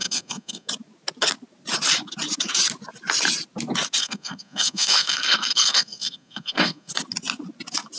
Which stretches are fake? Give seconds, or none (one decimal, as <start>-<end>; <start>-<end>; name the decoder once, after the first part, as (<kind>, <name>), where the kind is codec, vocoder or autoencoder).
0.0-0.7 (codec, SNAC); 4.0-6.9